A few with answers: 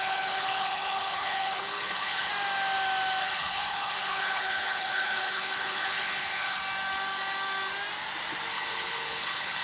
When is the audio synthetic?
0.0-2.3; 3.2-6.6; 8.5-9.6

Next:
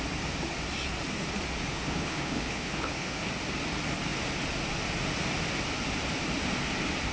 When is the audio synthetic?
1.7-3.3

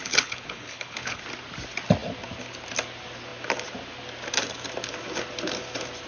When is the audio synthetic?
0.0-1.2

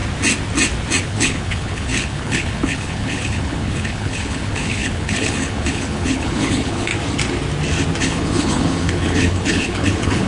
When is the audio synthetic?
1.0-6.9; 8.0-10.3

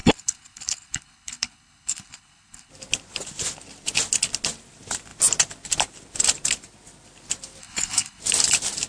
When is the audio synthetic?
0.0-2.7; 7.6-8.2

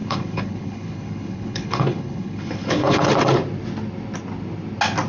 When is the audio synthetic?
0.0-3.1

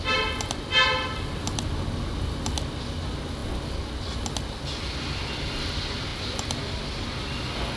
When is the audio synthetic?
none